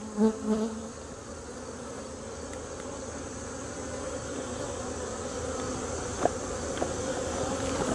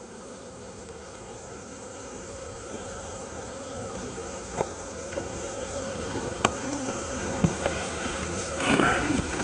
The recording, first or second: first